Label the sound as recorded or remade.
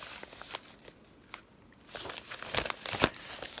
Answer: recorded